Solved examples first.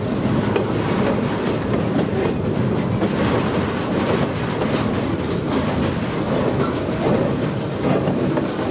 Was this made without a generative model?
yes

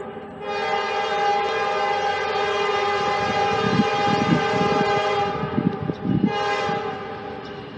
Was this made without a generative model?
yes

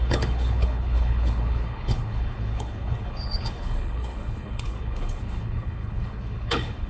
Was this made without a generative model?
no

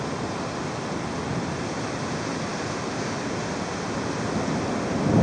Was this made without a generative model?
yes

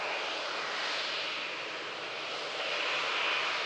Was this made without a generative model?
yes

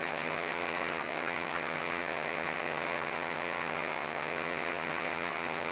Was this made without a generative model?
no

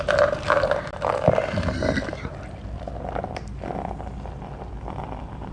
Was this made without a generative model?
yes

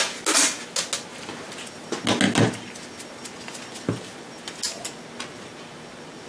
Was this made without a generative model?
yes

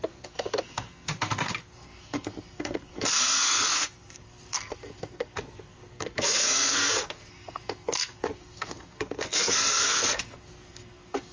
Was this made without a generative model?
no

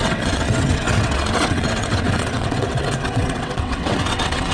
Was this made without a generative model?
no